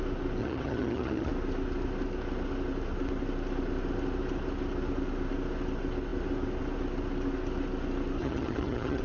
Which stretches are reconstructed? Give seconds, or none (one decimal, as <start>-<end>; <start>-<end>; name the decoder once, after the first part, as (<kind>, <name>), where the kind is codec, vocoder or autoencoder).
0.4-1.3 (vocoder, HiFi-GAN); 8.2-9.0